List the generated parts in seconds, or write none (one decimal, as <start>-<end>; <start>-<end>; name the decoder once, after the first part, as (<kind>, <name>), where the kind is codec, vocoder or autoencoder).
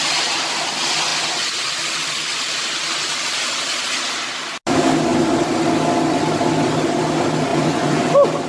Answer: 7.5-8.1 (vocoder, Vocos)